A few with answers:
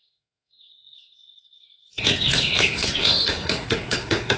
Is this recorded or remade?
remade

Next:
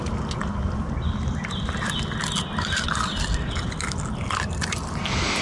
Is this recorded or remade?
recorded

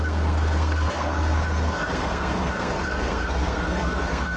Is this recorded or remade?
remade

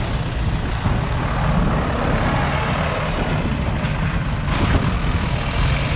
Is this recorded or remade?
recorded